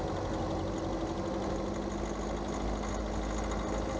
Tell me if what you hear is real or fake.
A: real